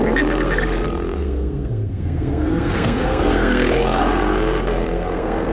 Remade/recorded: remade